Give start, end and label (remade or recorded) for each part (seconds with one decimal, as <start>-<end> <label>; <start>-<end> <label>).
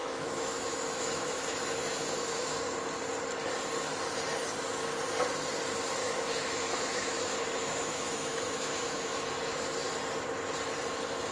0.0-2.6 remade; 2.6-6.0 recorded; 6.0-9.3 remade; 9.3-11.3 recorded